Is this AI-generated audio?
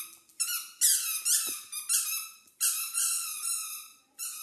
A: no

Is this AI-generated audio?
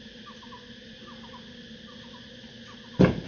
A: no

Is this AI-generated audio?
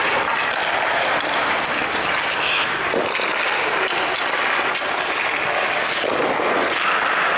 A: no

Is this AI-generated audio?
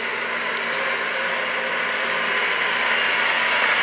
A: no